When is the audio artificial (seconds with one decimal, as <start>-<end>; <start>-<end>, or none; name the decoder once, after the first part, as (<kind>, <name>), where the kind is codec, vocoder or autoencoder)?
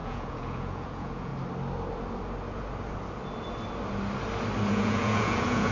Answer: 0.0-1.3 (vocoder, Vocos); 4.7-5.7